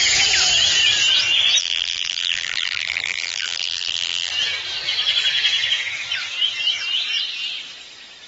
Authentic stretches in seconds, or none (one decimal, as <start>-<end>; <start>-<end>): 0.0-1.6; 4.3-8.3